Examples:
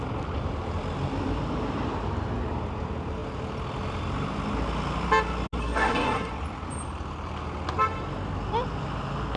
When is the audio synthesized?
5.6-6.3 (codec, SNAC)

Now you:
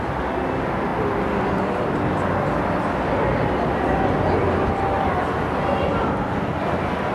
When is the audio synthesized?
none

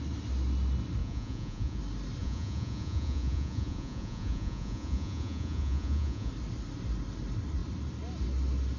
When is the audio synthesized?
1.0-1.8 (vocoder, Vocos); 2.2-6.3